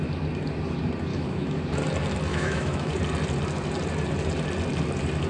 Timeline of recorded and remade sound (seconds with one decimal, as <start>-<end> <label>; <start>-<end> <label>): 0.0-1.1 recorded; 1.1-1.6 remade; 1.6-2.3 recorded; 2.3-2.9 remade; 2.9-5.3 recorded